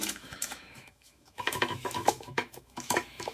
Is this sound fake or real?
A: fake